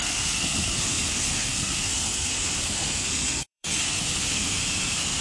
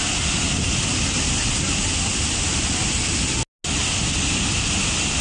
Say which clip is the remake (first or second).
first